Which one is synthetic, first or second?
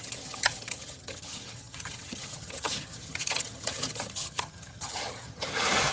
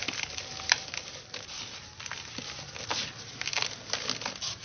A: first